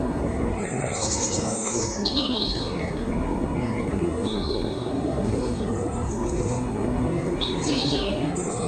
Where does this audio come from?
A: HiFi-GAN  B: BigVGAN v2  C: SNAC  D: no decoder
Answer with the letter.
C